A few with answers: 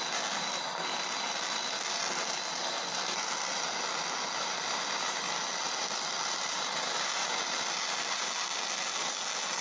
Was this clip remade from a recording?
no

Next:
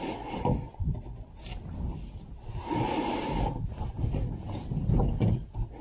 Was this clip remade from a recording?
no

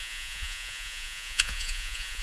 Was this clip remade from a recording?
yes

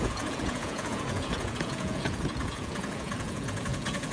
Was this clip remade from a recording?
yes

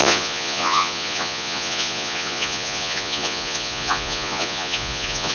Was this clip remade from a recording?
yes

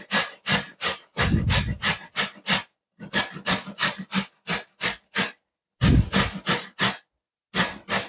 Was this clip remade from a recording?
no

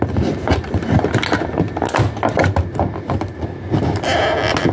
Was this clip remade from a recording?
no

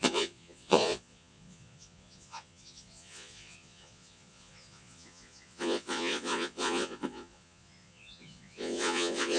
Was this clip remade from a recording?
yes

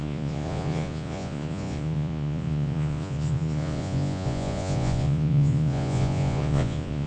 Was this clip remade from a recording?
yes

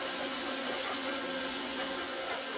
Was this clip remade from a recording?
yes